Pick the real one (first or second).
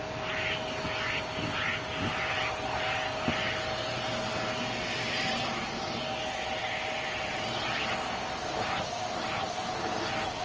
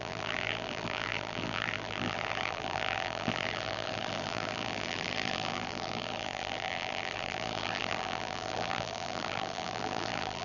first